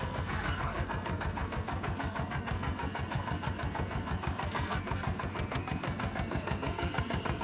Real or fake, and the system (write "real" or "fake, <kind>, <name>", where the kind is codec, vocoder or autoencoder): fake, codec, SNAC